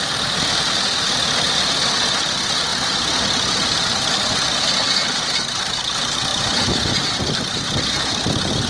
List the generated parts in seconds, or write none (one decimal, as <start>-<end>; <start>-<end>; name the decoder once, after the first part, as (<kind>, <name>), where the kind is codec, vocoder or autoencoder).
none